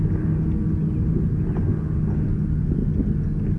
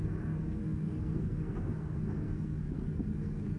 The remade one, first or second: second